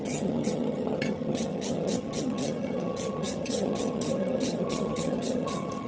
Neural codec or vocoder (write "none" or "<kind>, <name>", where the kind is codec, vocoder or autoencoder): vocoder, HiFi-GAN